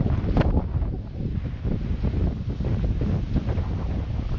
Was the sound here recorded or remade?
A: recorded